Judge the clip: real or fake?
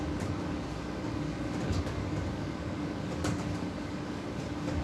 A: fake